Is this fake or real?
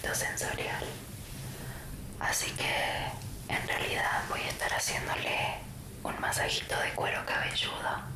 real